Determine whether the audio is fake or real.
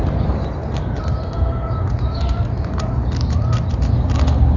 real